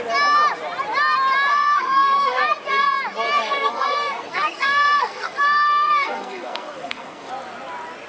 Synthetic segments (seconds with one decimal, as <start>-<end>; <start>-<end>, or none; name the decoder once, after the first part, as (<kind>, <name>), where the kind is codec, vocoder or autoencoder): 1.5-2.4 (codec, SNAC); 3.4-7.3